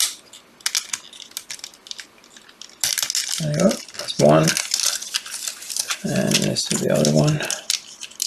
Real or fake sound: real